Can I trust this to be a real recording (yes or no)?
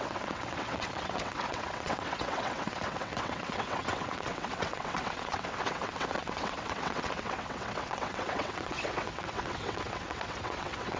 no